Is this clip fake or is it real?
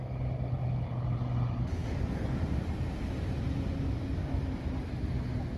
real